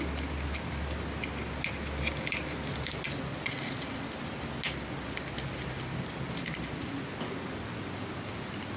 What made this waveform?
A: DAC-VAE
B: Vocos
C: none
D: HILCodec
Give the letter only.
C